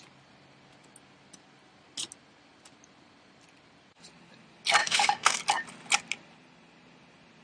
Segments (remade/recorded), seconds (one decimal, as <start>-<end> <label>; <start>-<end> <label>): 0.0-4.8 recorded; 4.8-5.4 remade; 5.4-7.4 recorded